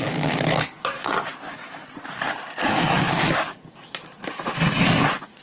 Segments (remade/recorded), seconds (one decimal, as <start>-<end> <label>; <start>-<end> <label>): 0.0-1.3 remade; 1.3-3.0 recorded; 3.0-3.5 remade; 3.5-5.4 recorded